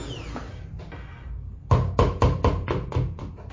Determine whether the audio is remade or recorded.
recorded